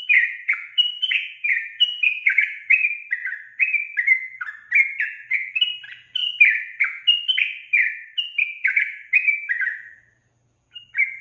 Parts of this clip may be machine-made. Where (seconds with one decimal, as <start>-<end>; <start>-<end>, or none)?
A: 0.0-3.2; 5.0-6.2; 8.2-11.2